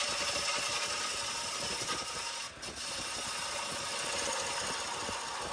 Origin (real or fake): real